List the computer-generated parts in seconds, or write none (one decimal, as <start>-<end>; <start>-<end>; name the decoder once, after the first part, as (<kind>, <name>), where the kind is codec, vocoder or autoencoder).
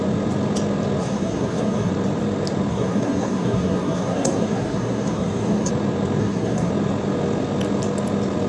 1.0-1.9 (codec, SNAC); 2.7-5.7; 6.2-6.7